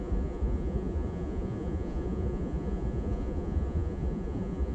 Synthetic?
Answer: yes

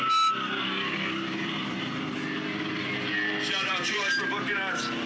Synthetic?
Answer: yes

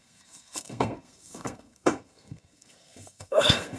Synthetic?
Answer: yes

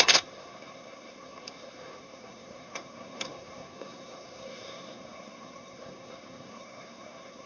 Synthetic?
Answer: yes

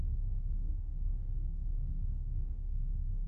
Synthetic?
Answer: yes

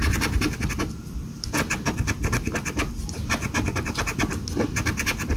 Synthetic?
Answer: yes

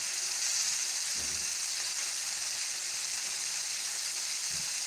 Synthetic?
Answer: no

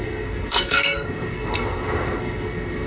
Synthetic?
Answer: yes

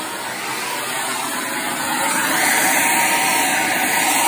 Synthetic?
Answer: no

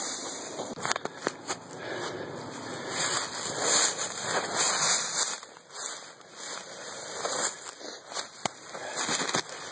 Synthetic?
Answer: no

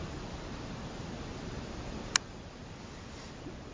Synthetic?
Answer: no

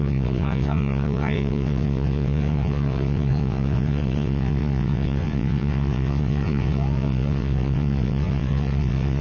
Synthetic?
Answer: yes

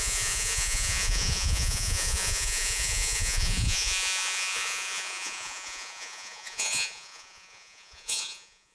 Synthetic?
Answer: yes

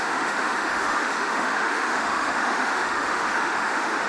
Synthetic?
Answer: yes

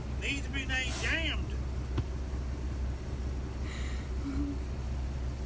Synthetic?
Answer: no